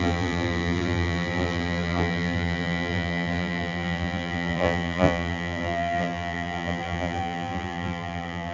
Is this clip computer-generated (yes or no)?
yes